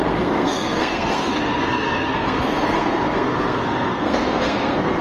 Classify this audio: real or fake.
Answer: fake